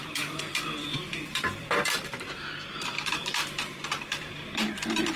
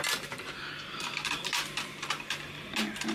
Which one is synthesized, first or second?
first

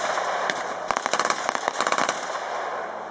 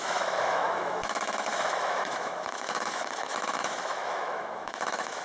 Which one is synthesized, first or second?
second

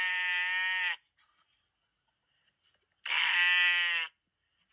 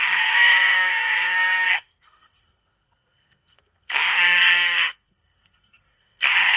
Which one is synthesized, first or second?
second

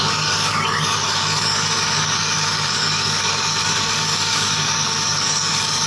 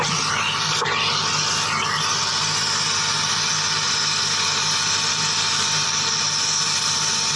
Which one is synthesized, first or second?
first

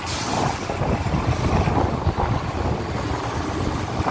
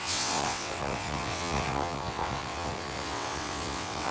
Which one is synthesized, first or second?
second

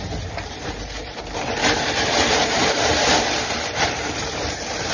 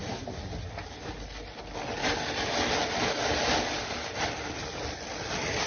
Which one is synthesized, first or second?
first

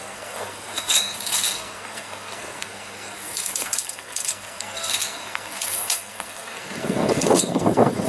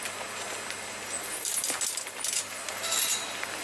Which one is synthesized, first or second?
first